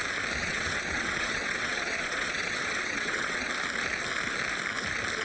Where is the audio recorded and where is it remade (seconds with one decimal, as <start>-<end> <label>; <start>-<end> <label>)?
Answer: 0.0-0.4 recorded; 0.4-3.5 remade; 3.5-5.2 recorded